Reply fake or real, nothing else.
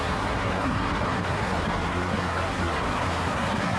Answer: fake